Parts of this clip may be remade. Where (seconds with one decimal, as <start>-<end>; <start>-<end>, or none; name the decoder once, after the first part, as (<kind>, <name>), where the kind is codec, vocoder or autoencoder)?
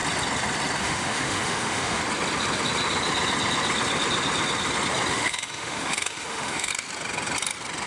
0.8-2.0 (autoencoder, DAC-VAE); 5.1-6.7